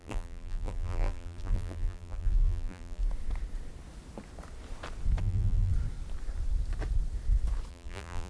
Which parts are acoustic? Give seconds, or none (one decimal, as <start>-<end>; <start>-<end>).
3.0-5.2; 5.7-7.7